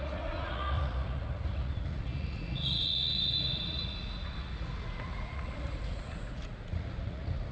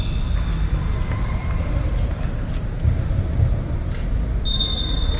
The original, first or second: second